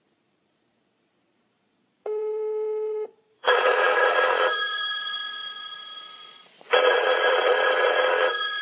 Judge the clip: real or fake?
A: fake